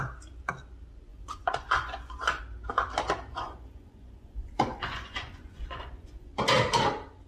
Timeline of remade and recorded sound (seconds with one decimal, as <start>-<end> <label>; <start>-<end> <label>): 0.0-1.1 recorded; 1.1-2.4 remade; 2.4-3.3 recorded; 3.3-6.3 remade; 6.3-7.3 recorded